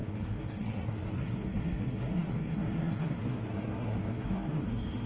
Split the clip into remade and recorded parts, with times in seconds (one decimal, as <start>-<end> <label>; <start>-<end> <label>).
0.0-5.1 remade